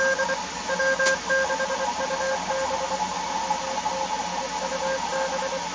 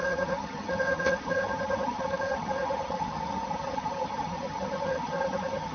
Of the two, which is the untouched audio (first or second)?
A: first